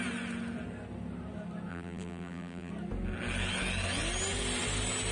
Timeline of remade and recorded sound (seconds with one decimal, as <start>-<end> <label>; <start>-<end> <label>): 0.0-1.7 recorded; 1.7-2.7 remade; 2.7-5.1 recorded

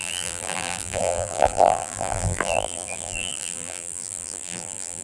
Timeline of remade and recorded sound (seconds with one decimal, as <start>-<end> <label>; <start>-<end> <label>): 0.0-5.0 remade

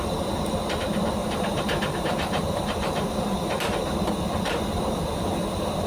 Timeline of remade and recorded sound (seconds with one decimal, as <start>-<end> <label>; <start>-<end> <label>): 0.0-1.2 recorded; 1.2-4.1 remade; 4.1-5.9 recorded

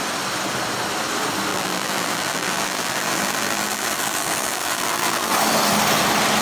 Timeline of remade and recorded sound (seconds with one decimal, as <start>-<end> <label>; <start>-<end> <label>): 0.0-1.5 recorded; 1.5-5.3 remade; 5.3-6.4 recorded

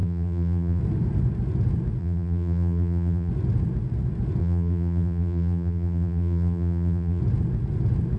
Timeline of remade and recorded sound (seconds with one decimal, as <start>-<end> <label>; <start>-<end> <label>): 0.0-0.8 remade; 0.8-2.0 recorded; 2.0-3.3 remade; 3.3-4.4 recorded; 4.4-7.2 remade; 7.2-8.2 recorded